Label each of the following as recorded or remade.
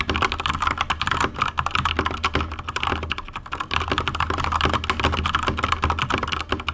recorded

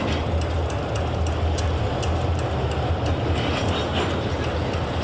recorded